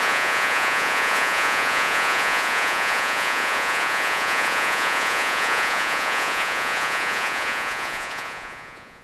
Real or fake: fake